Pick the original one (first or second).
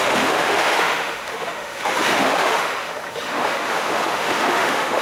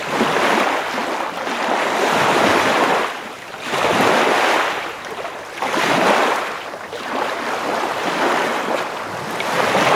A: second